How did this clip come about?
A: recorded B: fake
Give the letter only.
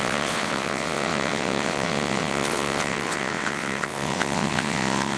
B